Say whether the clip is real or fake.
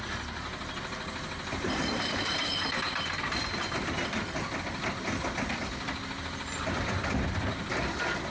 fake